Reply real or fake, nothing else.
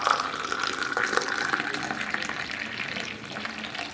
real